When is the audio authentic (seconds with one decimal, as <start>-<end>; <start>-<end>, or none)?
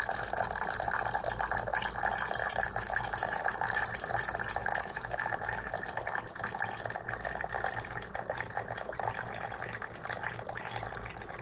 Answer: 0.0-2.4; 3.8-4.6; 5.7-11.4